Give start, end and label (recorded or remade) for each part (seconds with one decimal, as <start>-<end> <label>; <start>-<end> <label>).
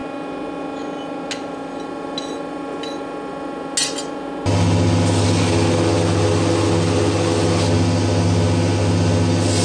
0.0-9.6 recorded